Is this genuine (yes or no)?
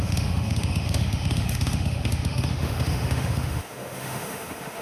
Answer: no